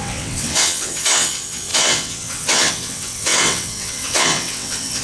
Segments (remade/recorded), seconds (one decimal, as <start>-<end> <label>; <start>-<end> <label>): 0.0-5.0 remade